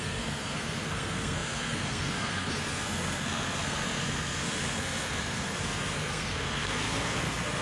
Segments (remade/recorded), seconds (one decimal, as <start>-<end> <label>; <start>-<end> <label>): 0.0-7.6 remade